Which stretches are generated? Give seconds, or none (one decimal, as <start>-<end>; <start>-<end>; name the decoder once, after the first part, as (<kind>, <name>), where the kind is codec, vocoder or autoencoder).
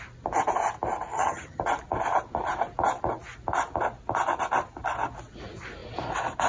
1.1-1.6 (vocoder, HiFi-GAN)